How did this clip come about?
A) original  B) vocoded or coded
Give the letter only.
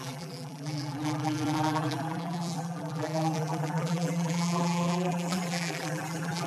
B